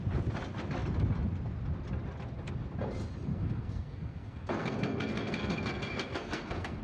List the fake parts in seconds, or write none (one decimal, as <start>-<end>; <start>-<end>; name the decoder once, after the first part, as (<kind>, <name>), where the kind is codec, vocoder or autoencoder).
3.3-6.8 (codec, SNAC)